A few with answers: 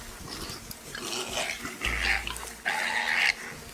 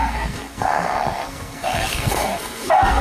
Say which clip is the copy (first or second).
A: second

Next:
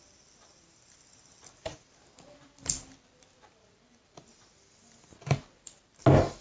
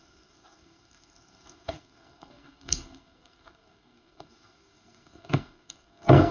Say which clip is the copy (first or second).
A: second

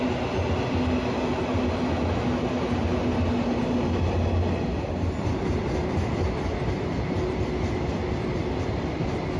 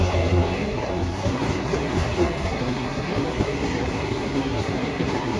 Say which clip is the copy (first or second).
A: second